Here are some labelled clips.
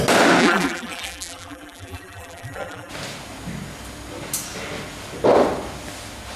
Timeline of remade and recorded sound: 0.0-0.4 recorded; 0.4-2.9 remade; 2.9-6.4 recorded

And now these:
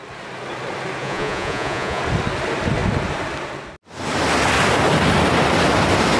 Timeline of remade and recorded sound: 0.0-1.0 recorded; 1.0-2.0 remade; 2.0-6.2 recorded

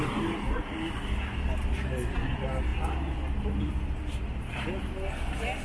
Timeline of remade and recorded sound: 0.0-5.6 recorded

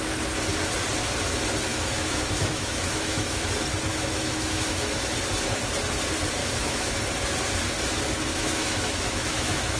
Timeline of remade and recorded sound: 0.0-1.7 recorded; 1.7-3.5 remade; 3.5-3.9 recorded; 3.9-5.0 remade; 5.0-6.4 recorded; 6.4-7.0 remade; 7.0-8.3 recorded; 8.3-9.8 remade

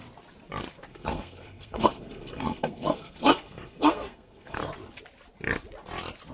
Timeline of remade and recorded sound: 0.0-0.9 recorded; 0.9-4.6 remade; 4.6-6.3 recorded

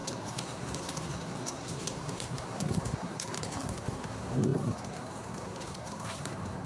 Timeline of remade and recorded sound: 0.0-6.7 remade

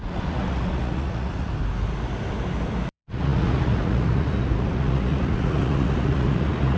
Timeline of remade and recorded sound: 0.0-1.5 remade; 1.5-2.9 recorded; 2.9-6.8 remade